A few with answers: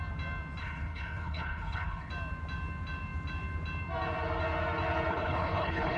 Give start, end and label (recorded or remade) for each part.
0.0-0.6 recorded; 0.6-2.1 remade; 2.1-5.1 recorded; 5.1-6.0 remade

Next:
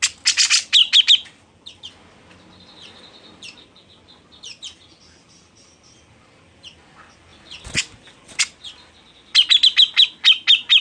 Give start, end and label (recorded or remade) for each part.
0.0-10.8 recorded